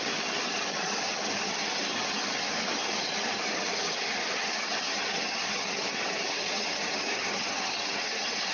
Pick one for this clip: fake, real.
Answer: fake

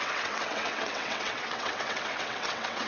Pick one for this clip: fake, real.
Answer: fake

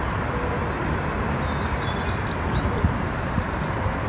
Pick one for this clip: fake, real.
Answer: real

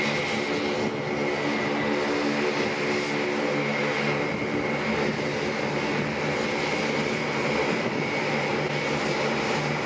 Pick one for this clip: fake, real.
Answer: real